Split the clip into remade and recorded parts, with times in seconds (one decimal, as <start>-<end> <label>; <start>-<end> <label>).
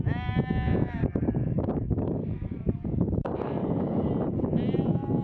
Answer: 0.0-1.0 recorded; 1.0-4.1 remade; 4.1-5.2 recorded